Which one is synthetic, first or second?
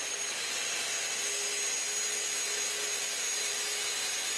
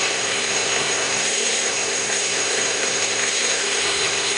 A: second